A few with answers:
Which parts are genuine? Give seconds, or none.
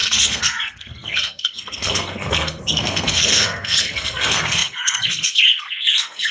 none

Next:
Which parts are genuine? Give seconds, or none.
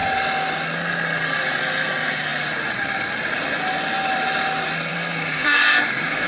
0.0-4.9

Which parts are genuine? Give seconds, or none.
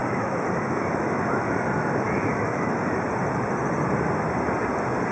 3.1-5.1